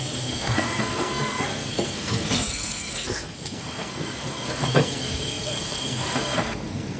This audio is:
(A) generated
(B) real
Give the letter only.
A